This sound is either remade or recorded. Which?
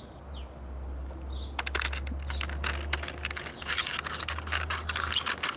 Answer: recorded